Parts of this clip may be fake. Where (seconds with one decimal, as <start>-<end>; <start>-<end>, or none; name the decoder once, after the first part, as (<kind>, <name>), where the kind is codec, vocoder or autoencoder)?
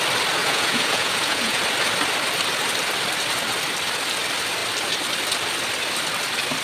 0.4-1.6 (vocoder, Vocos)